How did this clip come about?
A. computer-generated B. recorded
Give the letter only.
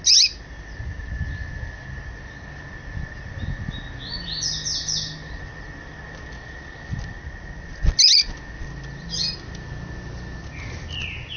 B